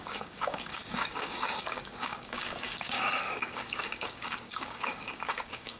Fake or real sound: fake